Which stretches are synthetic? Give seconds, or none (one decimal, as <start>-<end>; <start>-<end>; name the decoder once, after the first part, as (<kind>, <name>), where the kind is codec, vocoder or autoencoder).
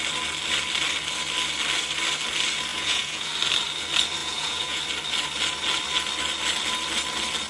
2.7-3.3 (vocoder, Vocos); 4.2-4.8